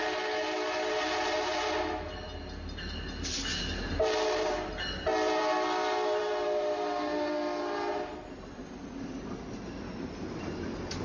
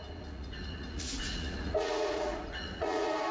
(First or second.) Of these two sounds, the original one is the first